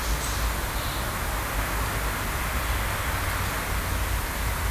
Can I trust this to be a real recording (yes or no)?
yes